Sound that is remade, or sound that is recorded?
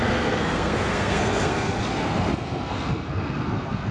remade